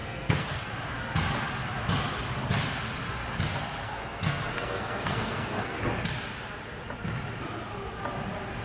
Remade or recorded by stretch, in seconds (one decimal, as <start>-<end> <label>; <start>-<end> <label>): 0.0-0.7 remade; 0.7-3.8 recorded; 3.8-5.8 remade; 5.8-8.6 recorded